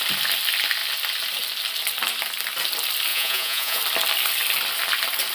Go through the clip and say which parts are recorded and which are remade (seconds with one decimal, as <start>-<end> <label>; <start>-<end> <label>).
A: 0.0-3.1 recorded; 3.1-3.8 remade; 3.8-5.3 recorded